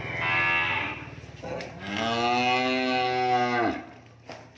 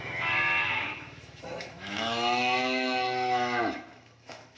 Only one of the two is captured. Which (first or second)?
first